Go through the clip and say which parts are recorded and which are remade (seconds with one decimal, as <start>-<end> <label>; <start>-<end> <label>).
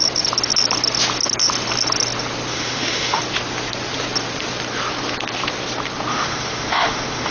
0.0-2.5 recorded; 2.5-3.2 remade; 3.2-6.1 recorded; 6.1-7.3 remade